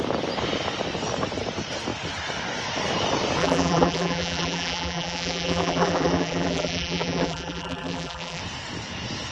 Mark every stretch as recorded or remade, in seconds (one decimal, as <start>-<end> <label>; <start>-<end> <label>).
0.0-3.4 recorded; 3.4-8.4 remade; 8.4-9.3 recorded

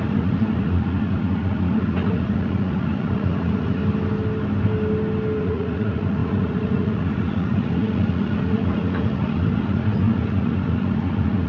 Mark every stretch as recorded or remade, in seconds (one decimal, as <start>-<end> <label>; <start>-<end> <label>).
0.0-3.8 remade; 3.8-5.4 recorded; 5.4-11.5 remade

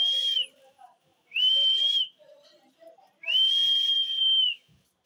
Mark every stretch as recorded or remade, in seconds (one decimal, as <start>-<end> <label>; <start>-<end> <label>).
0.0-5.1 recorded

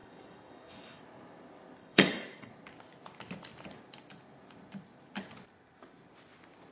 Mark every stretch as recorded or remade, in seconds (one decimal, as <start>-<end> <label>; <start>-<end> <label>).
0.0-1.0 remade; 1.0-1.8 recorded; 1.8-2.5 remade; 2.5-6.7 recorded

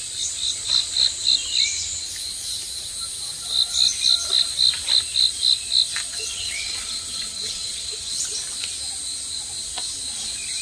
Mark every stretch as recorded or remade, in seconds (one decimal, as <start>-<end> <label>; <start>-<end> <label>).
0.0-6.1 recorded; 6.1-8.3 remade; 8.3-10.6 recorded

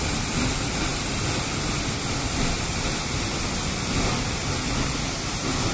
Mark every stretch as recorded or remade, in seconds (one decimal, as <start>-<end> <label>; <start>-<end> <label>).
0.0-5.7 recorded